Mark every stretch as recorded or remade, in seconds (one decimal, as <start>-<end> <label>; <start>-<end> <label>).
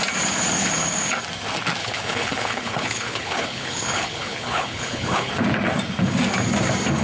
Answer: 0.0-1.8 recorded; 1.8-5.3 remade; 5.3-7.0 recorded